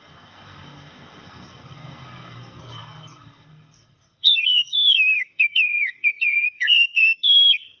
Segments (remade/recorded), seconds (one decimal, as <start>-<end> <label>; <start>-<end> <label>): 0.0-7.8 remade